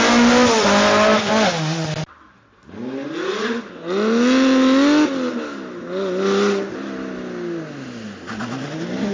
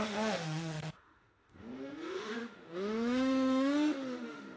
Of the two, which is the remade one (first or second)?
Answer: second